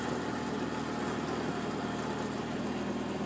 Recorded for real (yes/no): yes